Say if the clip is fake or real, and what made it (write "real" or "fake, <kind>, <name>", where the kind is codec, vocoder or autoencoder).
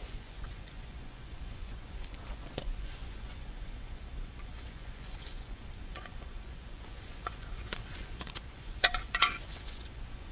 fake, vocoder, Vocos